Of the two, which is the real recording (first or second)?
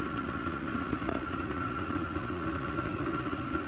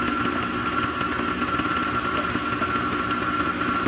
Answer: second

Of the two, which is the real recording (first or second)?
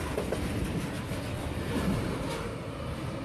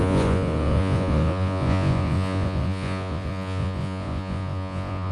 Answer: first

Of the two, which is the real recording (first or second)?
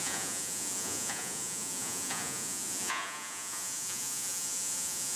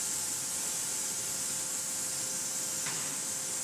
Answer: second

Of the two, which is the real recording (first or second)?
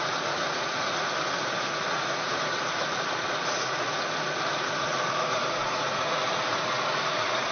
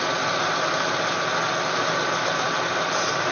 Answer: second